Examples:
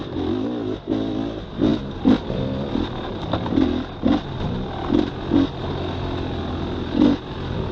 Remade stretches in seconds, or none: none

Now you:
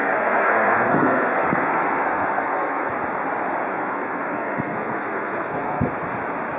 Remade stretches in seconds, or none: 0.0-2.9; 3.7-5.9

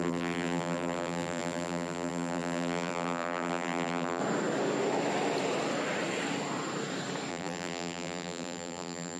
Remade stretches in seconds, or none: 0.0-4.2; 7.3-9.2

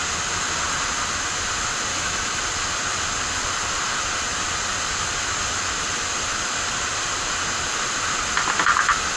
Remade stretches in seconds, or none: 1.9-2.4

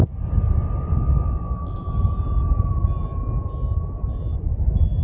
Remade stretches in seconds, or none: none